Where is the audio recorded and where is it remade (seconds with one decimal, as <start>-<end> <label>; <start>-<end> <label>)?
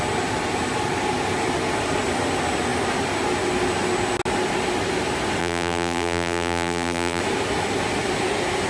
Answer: 0.0-5.4 recorded; 5.4-7.2 remade; 7.2-8.7 recorded